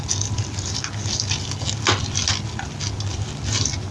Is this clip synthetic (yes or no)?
no